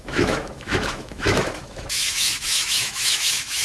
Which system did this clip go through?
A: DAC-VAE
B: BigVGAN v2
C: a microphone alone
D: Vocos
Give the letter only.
A